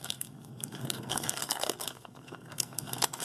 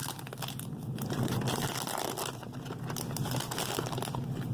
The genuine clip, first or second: second